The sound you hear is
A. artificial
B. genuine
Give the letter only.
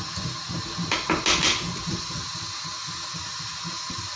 B